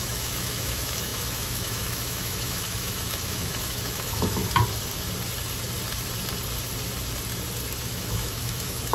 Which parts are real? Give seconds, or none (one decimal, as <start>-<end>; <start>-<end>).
4.4-7.8